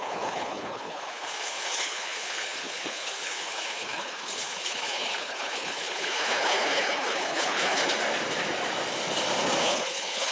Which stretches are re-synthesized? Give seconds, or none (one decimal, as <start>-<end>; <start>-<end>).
0.0-7.8; 9.6-10.3

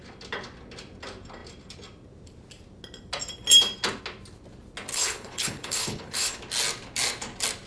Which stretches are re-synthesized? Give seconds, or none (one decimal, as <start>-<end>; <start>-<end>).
4.9-6.4

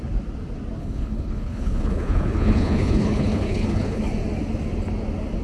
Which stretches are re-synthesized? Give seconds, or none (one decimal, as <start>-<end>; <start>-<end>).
0.8-4.0

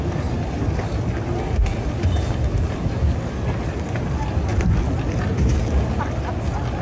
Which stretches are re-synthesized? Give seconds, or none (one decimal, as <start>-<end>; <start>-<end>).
none